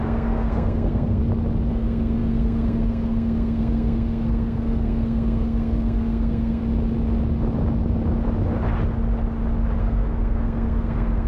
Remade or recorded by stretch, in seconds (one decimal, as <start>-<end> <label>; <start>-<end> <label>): 0.0-1.2 remade; 1.2-1.7 recorded; 1.7-6.6 remade; 6.6-9.8 recorded; 9.8-11.3 remade